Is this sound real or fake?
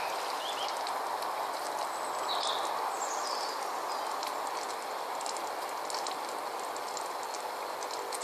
real